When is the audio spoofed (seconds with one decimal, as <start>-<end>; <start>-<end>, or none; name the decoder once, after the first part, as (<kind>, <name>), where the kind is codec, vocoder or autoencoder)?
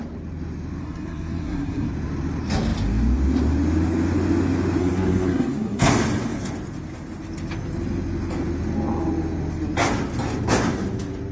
0.8-1.9 (codec, SNAC); 4.8-5.8